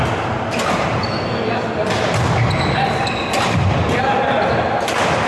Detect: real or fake real